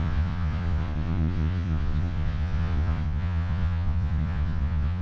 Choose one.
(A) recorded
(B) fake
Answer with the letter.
B